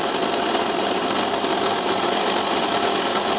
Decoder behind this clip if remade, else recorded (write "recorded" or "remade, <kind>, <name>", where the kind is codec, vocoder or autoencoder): remade, vocoder, BigVGAN v2